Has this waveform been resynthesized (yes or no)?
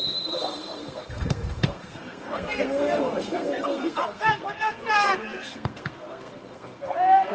yes